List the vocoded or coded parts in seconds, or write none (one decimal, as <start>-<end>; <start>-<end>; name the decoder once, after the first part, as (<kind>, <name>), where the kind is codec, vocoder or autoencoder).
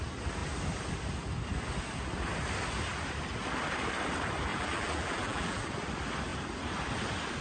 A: 4.5-5.7 (vocoder, BigVGAN v2)